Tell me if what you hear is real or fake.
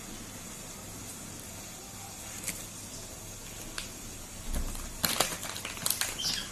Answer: real